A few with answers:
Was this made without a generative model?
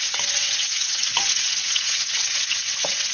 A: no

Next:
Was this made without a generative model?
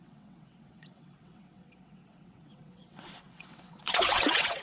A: no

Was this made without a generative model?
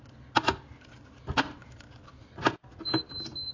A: yes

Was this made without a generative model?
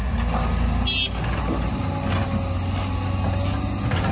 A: yes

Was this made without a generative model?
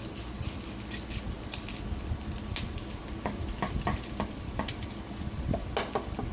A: yes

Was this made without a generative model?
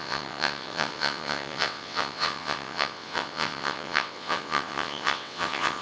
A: no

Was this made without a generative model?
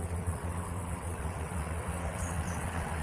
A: no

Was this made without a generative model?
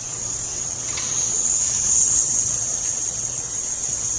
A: no